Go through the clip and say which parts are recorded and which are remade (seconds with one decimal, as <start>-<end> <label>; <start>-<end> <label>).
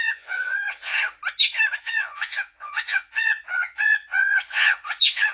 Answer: 0.0-0.9 remade; 0.9-1.8 recorded; 1.8-5.3 remade